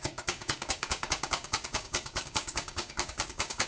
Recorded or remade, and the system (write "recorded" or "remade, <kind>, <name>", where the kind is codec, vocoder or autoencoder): remade, codec, DAC